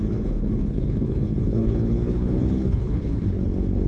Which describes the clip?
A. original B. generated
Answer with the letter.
B